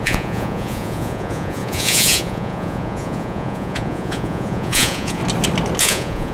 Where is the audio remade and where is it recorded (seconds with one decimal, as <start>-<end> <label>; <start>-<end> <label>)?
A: 0.0-5.2 remade; 5.2-5.8 recorded; 5.8-6.3 remade

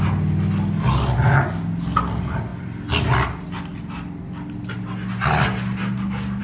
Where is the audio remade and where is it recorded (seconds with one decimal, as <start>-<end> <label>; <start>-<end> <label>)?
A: 0.0-6.4 recorded